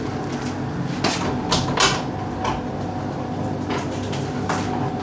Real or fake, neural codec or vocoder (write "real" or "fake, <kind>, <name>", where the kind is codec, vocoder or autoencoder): real